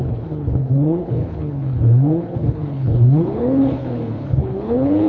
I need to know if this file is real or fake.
fake